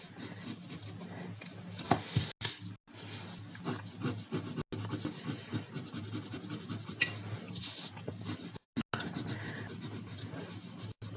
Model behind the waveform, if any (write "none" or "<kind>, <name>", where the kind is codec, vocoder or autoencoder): none